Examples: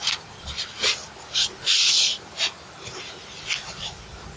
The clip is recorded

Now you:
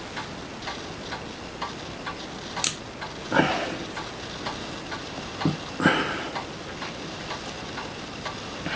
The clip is recorded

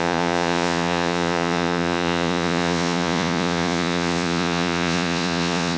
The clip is remade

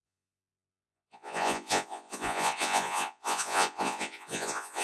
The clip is remade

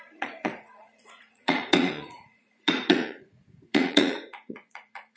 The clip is remade